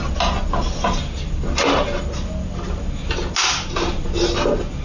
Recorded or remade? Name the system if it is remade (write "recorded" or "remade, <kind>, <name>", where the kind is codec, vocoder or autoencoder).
recorded